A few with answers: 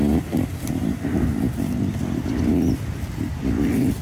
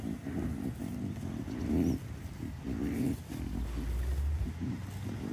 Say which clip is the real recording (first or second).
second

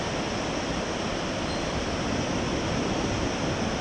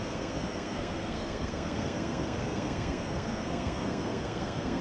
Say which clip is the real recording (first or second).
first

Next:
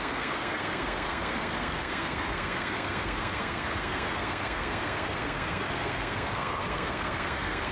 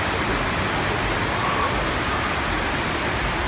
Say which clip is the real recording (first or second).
second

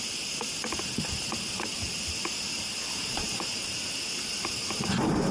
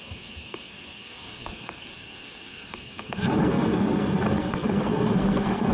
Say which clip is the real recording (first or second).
first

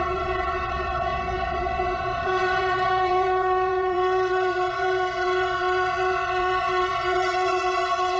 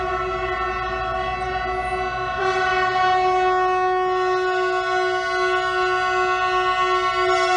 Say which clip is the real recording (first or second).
second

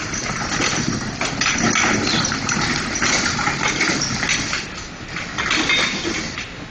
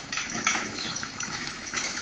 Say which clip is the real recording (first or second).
first